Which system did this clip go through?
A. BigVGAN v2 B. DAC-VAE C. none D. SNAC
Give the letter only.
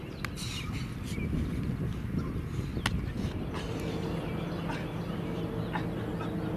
C